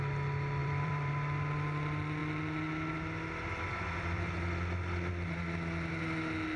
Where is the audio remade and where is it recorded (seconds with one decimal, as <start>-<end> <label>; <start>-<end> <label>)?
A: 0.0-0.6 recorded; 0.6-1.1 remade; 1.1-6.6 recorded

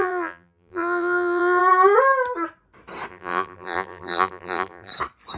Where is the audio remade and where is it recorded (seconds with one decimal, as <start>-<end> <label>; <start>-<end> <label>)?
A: 0.0-1.6 remade; 1.6-3.1 recorded; 3.1-4.9 remade; 4.9-5.4 recorded

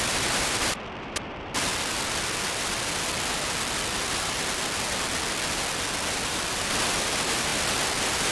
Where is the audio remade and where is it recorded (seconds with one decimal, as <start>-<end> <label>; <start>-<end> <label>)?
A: 0.0-1.7 remade; 1.7-6.7 recorded; 6.7-8.3 remade